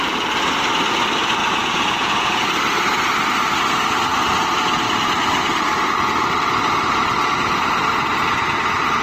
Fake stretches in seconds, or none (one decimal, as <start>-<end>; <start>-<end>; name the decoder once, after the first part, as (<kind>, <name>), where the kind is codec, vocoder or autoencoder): 1.4-2.4 (vocoder, Vocos)